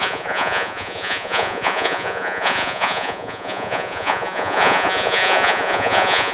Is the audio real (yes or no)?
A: no